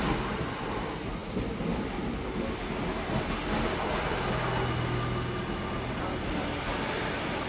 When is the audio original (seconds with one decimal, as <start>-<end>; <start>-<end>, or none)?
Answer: 0.0-7.5